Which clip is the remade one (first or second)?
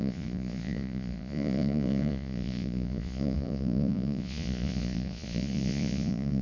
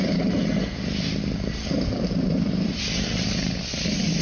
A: first